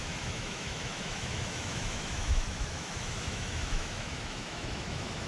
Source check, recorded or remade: remade